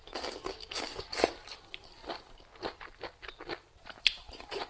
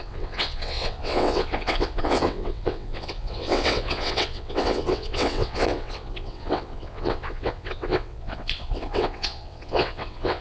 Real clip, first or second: first